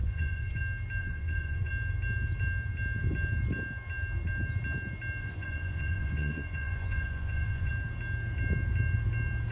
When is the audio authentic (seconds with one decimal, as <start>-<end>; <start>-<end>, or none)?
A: 0.6-1.0; 1.7-5.2; 7.7-9.5